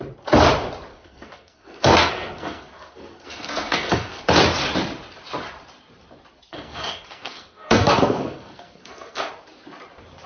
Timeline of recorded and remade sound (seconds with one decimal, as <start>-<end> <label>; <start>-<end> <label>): 0.0-0.9 recorded; 0.9-4.2 remade; 4.2-6.5 recorded; 6.5-9.3 remade; 9.3-10.3 recorded

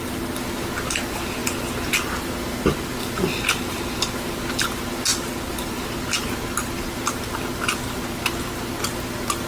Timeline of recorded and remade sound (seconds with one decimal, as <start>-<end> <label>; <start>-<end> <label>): 0.0-9.5 recorded

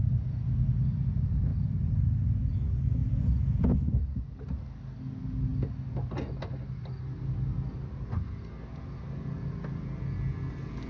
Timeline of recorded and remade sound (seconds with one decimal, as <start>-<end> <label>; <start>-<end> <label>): 0.0-3.0 recorded; 3.0-4.2 remade; 4.2-10.9 recorded

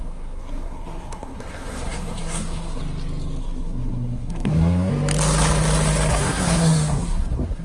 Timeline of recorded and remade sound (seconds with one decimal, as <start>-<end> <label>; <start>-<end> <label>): 0.0-2.8 remade; 2.8-3.4 recorded; 3.4-4.9 remade; 4.9-6.1 recorded; 6.1-7.6 remade

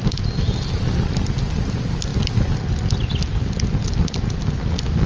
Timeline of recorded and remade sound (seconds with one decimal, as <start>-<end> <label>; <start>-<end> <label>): 0.0-5.1 recorded

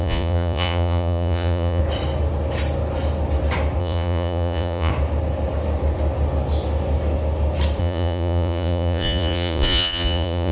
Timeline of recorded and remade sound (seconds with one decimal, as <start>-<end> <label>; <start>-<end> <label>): 0.0-1.8 remade; 1.8-3.8 recorded; 3.8-4.9 remade; 4.9-7.8 recorded; 7.8-10.5 remade

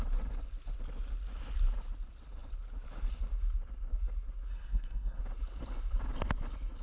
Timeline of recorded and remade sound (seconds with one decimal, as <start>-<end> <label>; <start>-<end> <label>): 0.0-4.5 recorded; 4.5-5.2 remade; 5.2-6.8 recorded

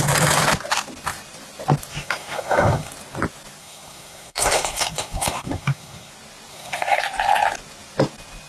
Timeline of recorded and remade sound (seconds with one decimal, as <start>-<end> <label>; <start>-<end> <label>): 0.0-1.9 recorded; 1.9-2.9 remade; 2.9-3.6 recorded; 3.6-6.1 remade; 6.1-6.5 recorded; 6.5-7.0 remade; 7.0-8.5 recorded